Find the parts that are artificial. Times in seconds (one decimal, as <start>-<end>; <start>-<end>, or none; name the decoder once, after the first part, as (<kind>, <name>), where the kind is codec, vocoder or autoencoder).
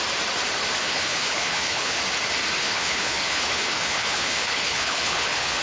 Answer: 0.8-2.0 (codec, HILCodec); 2.6-5.6